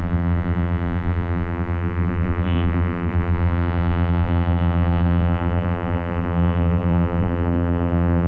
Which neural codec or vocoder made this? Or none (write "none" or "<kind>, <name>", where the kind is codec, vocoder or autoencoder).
vocoder, BigVGAN v2